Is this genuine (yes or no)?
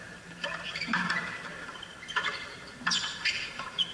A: no